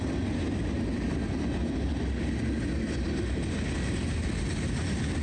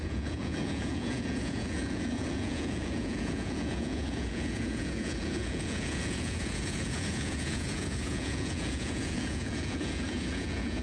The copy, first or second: second